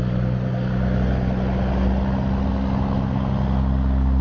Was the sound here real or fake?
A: real